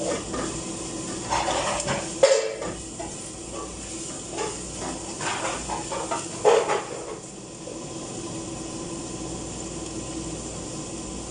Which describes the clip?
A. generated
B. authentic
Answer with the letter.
B